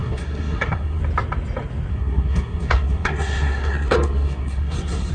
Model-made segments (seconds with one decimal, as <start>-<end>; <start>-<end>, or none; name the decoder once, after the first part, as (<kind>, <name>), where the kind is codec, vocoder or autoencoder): 0.0-1.0 (codec, SNAC); 1.9-5.1

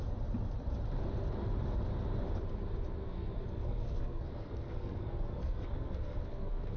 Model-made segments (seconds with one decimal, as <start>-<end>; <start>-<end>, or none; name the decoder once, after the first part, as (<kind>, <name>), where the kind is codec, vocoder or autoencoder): 3.0-6.8 (codec, SNAC)